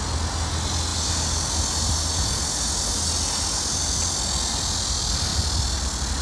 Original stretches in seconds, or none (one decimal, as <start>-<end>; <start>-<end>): 0.0-6.2

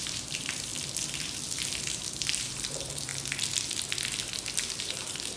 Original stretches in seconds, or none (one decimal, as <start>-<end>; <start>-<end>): 0.7-1.9; 3.1-4.8